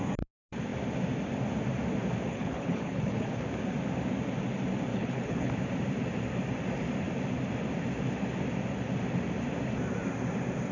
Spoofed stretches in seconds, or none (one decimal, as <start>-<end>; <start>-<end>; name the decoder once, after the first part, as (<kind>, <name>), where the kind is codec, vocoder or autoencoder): 2.3-3.3 (codec, HILCodec); 4.9-5.5